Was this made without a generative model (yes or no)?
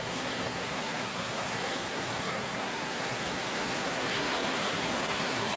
no